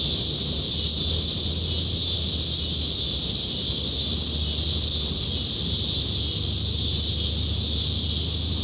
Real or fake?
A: real